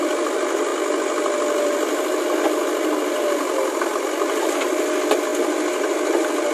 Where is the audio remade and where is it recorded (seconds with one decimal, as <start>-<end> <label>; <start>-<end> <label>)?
0.0-6.5 recorded